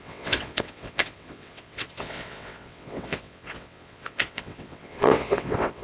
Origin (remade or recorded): remade